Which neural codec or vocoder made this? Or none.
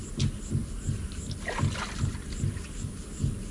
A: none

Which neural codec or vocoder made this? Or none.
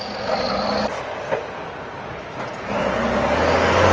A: none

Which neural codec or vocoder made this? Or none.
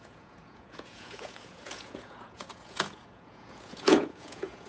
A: vocoder, Vocos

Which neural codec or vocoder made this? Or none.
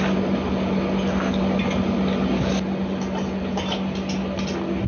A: none